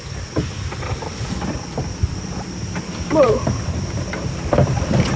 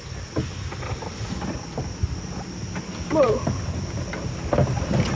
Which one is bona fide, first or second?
second